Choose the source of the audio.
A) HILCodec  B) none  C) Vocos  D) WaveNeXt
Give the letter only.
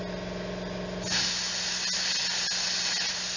B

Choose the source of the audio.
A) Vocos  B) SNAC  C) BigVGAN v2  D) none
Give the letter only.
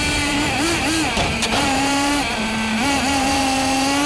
C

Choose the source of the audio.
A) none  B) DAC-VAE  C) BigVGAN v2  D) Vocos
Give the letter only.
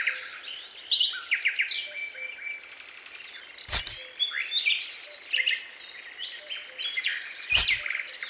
A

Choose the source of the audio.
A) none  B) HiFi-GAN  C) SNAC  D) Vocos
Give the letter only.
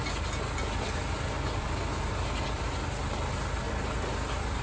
A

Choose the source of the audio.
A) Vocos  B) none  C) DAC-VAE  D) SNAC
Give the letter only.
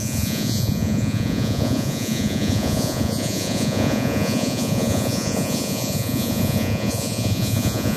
A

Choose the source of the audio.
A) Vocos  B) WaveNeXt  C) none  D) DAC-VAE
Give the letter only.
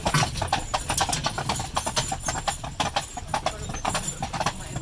C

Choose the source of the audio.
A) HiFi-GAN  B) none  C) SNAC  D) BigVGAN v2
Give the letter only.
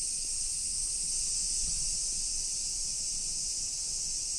B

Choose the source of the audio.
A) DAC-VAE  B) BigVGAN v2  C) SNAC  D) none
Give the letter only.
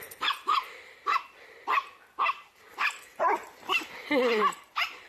B